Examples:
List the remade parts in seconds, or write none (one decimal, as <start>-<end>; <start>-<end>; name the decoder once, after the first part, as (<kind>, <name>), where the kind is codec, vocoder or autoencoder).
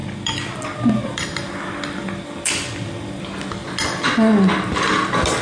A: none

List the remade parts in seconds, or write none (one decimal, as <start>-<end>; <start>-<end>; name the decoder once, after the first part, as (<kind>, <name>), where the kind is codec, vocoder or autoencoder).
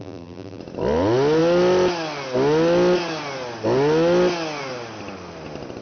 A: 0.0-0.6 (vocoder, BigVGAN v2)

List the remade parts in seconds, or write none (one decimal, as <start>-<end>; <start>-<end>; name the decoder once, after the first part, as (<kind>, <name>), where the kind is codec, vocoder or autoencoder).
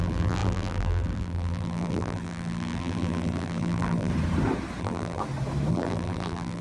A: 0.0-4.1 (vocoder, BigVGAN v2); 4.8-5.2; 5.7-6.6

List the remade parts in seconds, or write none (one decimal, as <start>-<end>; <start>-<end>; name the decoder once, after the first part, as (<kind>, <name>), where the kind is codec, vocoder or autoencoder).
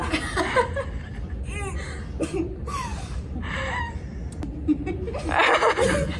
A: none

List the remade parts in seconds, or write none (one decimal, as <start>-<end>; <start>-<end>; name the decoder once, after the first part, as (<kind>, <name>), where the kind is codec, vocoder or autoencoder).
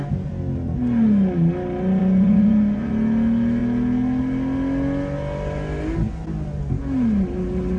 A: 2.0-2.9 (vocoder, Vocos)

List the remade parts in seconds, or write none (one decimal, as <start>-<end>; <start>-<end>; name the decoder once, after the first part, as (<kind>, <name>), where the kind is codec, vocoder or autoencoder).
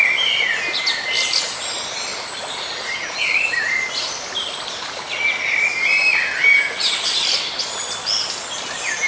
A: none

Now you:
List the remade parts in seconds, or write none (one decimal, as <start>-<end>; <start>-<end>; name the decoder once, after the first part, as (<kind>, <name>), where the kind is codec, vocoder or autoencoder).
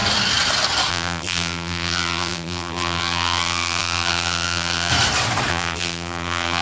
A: 0.9-4.9 (vocoder, BigVGAN v2); 5.5-6.6